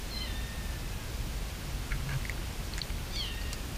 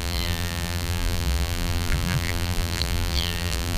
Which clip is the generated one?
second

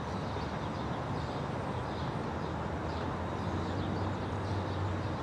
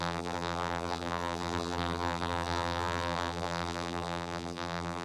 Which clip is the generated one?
second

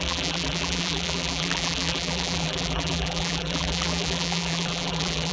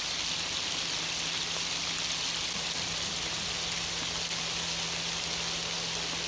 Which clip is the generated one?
first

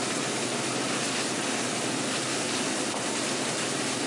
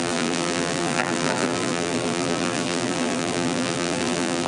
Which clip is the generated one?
second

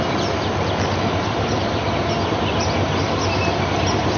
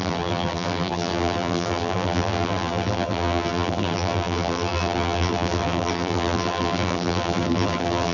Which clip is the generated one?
second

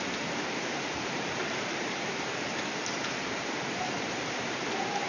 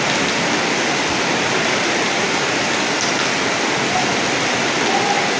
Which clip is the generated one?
first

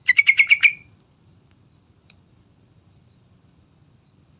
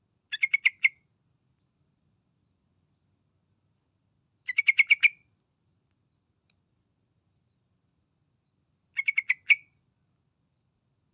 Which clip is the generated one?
first